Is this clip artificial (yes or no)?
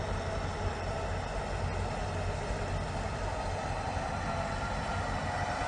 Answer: no